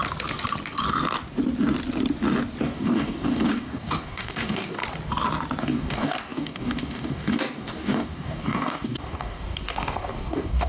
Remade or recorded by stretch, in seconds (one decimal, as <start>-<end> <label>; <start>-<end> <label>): 0.0-2.6 recorded; 2.6-4.8 remade; 4.8-5.6 recorded; 5.6-10.7 remade